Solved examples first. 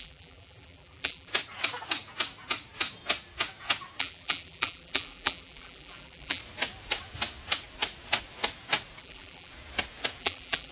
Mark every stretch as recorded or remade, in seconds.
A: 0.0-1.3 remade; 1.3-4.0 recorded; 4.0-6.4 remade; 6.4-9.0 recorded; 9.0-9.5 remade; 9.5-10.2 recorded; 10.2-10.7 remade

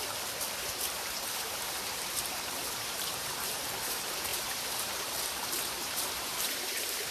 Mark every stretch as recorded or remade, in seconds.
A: 0.0-7.1 remade

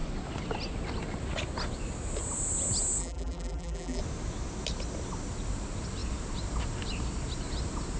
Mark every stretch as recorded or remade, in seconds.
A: 0.0-3.0 recorded; 3.0-4.0 remade; 4.0-8.0 recorded

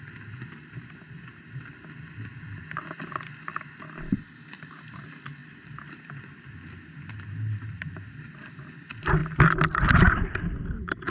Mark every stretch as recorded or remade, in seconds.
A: 0.0-5.4 recorded; 5.4-6.2 remade; 6.2-9.2 recorded; 9.2-10.0 remade; 10.0-11.1 recorded

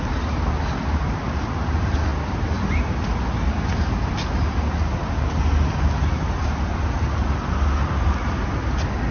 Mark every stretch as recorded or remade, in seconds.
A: 0.0-9.1 recorded

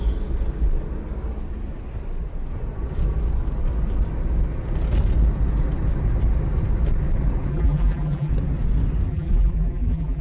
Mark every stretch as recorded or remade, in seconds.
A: 0.0-7.5 recorded; 7.5-8.3 remade; 8.3-9.1 recorded; 9.1-10.2 remade